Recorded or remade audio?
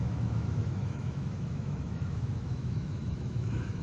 remade